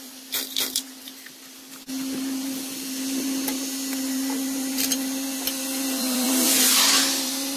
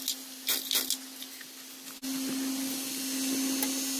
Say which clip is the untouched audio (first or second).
second